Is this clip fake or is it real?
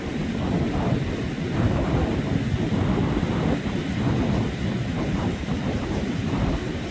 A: real